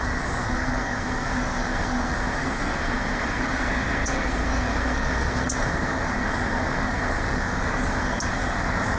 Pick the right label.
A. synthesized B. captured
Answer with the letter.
A